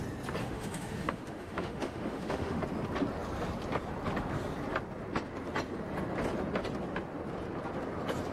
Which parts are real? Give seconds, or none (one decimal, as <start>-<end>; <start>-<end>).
0.0-0.4; 2.6-8.3